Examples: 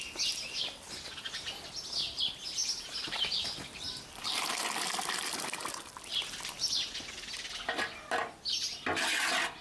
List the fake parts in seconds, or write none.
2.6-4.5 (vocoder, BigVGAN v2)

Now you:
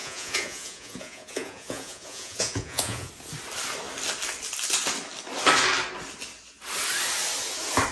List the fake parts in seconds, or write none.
0.0-3.1 (vocoder, Vocos)

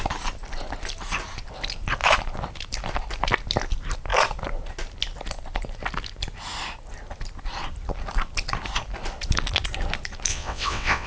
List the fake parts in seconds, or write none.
10.3-11.1 (vocoder, WaveNeXt)

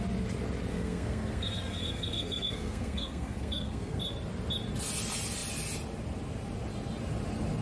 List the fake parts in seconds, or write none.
0.7-4.0 (codec, SNAC)

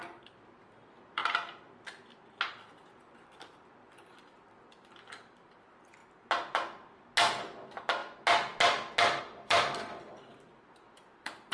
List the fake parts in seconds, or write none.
0.0-1.2 (vocoder, BigVGAN v2); 2.5-6.0; 7.4-8.0; 9.2-11.5

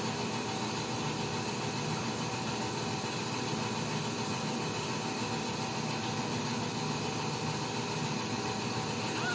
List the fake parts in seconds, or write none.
none

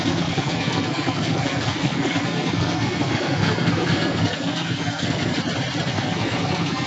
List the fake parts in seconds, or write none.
0.0-5.3 (codec, SNAC); 5.8-6.9

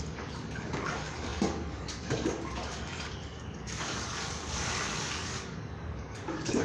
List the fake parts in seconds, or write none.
0.0-6.6 (codec, DAC)